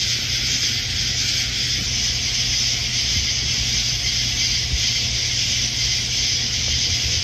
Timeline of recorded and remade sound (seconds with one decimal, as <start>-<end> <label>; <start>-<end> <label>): 0.0-7.2 recorded